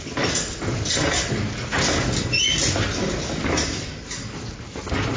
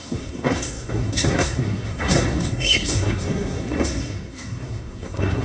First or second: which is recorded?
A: first